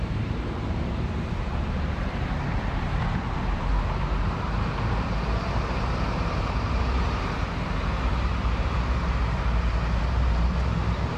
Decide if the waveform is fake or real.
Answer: fake